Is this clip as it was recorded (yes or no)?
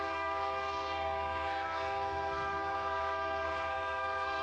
no